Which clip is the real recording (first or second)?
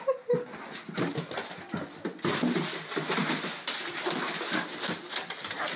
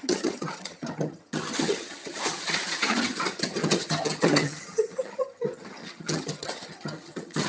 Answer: first